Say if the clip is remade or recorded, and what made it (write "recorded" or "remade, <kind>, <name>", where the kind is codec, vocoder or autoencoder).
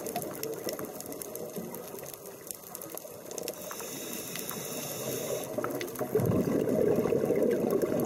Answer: recorded